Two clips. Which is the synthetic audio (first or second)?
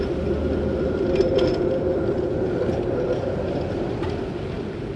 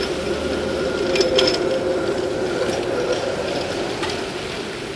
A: first